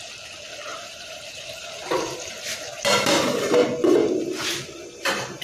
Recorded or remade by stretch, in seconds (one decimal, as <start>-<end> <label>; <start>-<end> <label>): 0.0-0.7 recorded; 0.7-2.4 remade; 2.4-5.4 recorded